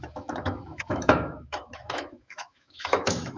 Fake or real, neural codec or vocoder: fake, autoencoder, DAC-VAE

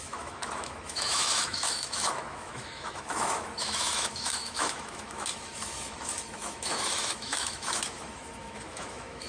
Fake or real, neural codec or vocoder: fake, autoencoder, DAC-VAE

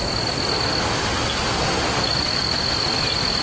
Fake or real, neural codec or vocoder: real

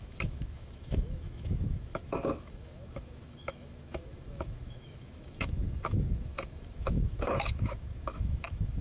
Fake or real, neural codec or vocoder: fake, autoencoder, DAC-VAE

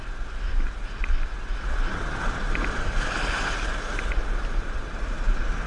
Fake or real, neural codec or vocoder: real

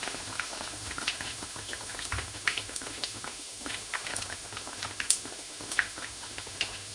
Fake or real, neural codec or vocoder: fake, autoencoder, DAC-VAE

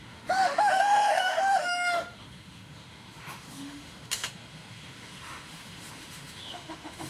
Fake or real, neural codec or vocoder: fake, autoencoder, DAC-VAE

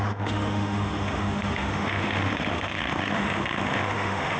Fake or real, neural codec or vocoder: fake, autoencoder, DAC-VAE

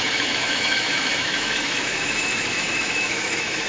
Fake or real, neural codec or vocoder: fake, autoencoder, DAC-VAE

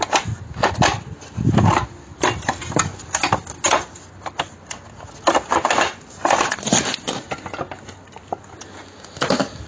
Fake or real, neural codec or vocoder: real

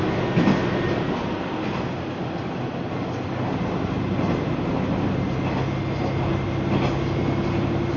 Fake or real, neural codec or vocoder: real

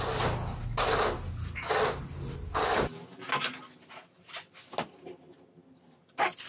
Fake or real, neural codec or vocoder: real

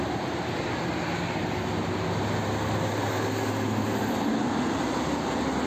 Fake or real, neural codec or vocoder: real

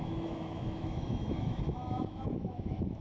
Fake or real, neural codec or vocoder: fake, autoencoder, DAC-VAE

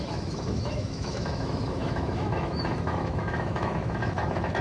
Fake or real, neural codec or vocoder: fake, autoencoder, DAC-VAE